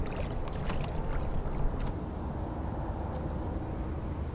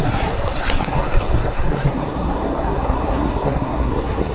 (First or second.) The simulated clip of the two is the second